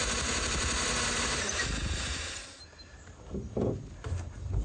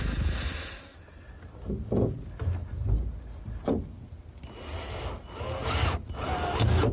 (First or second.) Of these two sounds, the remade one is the first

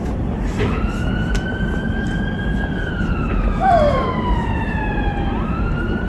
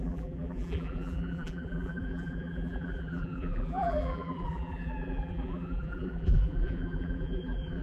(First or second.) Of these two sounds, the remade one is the second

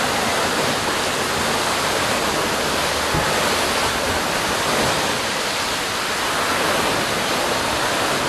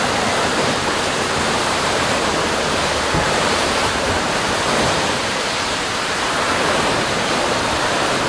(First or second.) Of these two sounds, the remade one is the second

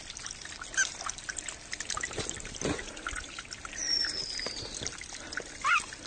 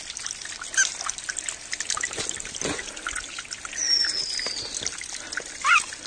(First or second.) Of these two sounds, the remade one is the first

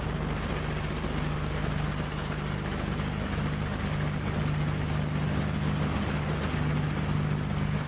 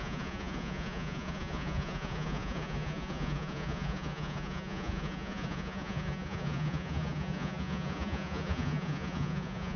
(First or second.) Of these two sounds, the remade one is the second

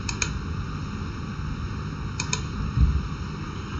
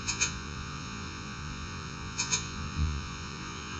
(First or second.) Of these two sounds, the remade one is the second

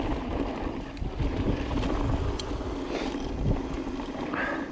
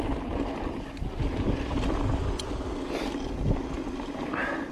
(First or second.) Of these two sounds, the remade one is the first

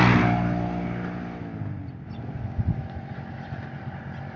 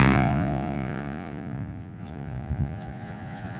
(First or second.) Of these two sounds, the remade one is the second